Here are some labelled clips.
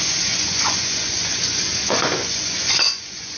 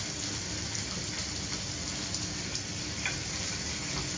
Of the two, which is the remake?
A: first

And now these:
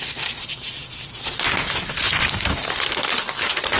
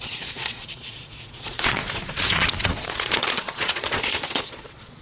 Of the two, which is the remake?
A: second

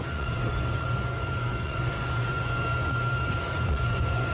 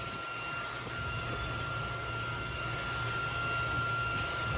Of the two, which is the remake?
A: first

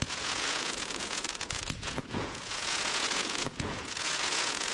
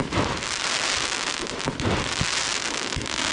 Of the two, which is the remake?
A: first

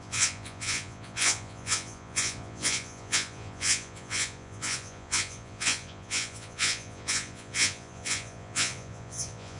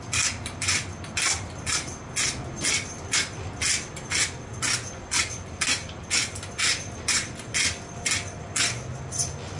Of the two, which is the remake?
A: first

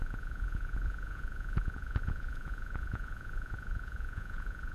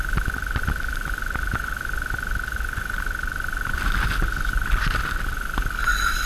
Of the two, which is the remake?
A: first